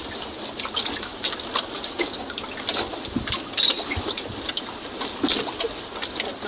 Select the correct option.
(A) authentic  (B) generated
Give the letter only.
A